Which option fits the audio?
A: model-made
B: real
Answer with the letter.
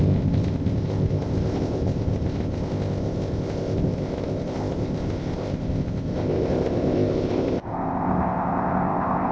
A